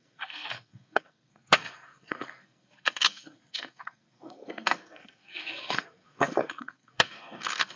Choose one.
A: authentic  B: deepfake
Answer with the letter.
B